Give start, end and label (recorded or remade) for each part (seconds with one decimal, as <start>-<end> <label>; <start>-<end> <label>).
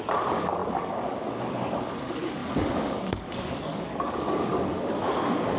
0.0-5.6 remade